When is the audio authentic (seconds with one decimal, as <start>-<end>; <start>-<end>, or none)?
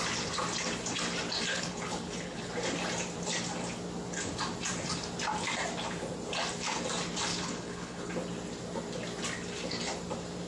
0.0-1.5; 2.5-7.3; 8.1-10.5